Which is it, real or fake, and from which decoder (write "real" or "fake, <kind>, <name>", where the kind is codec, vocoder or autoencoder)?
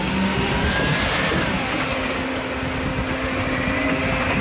real